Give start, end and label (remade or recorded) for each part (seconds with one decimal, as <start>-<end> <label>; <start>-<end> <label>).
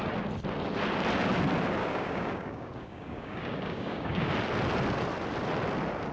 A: 0.0-1.8 recorded; 1.8-4.3 remade; 4.3-6.1 recorded